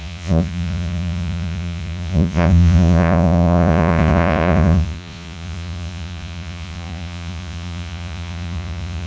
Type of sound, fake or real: fake